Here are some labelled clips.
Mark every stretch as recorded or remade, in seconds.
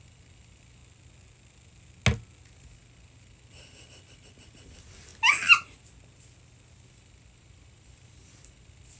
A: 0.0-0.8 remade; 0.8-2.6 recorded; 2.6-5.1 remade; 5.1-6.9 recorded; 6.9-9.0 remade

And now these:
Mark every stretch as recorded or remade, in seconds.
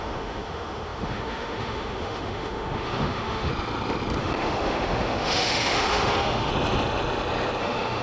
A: 0.0-3.5 remade; 3.5-4.2 recorded; 4.2-6.5 remade; 6.5-7.6 recorded; 7.6-8.0 remade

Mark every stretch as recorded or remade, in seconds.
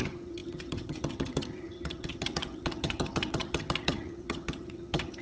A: 0.0-5.2 remade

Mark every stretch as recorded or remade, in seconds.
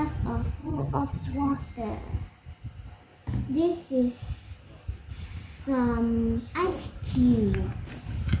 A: 0.0-0.6 recorded; 0.6-1.6 remade; 1.6-8.4 recorded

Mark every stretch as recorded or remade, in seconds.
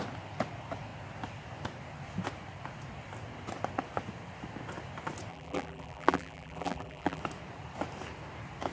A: 0.0-5.3 recorded; 5.3-7.2 remade; 7.2-8.7 recorded